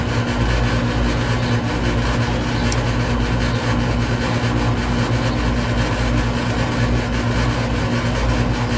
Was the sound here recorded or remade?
recorded